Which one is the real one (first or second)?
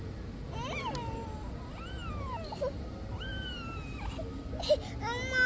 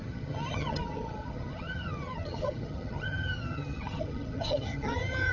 first